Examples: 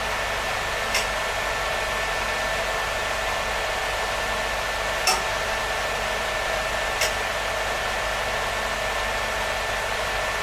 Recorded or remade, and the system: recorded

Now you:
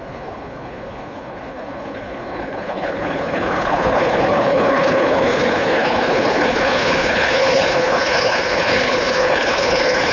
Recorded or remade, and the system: remade, codec, HILCodec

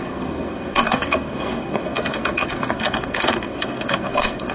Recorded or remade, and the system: remade, codec, SNAC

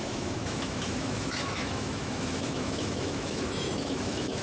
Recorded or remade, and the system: remade, autoencoder, DAC-VAE